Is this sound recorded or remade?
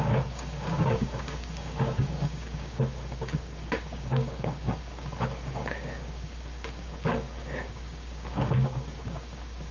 remade